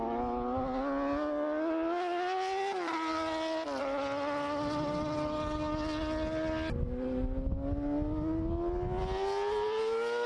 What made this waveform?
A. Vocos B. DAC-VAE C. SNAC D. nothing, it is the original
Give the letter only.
D